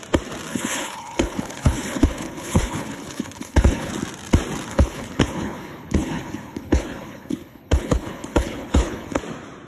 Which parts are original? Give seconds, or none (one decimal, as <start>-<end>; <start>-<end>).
0.0-0.5; 3.9-4.7; 9.2-9.7

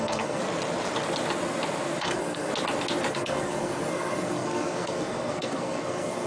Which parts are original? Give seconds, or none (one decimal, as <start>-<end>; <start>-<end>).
0.4-2.0; 2.5-3.1

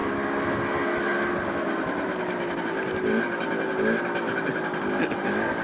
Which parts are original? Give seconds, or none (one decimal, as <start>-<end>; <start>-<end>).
0.0-5.6

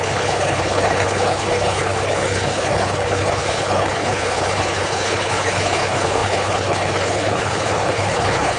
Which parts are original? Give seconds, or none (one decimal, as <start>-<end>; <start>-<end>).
none

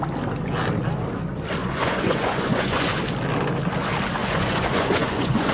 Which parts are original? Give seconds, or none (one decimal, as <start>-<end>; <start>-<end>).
0.0-1.6; 3.0-4.2

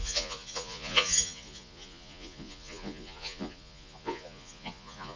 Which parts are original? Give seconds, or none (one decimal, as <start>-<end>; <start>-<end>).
none

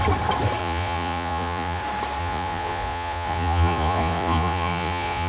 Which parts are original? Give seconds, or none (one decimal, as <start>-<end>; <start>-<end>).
0.0-0.6; 1.8-2.2

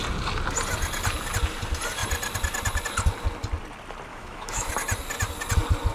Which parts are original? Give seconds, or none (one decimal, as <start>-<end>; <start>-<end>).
0.0-4.1; 4.7-5.9